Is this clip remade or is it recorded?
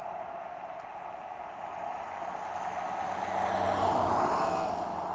recorded